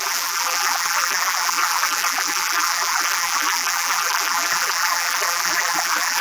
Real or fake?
fake